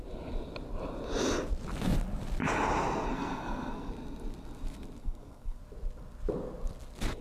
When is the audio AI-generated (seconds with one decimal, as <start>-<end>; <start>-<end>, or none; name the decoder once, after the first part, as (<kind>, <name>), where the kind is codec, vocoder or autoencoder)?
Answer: 3.1-3.9 (codec, SNAC); 5.0-5.6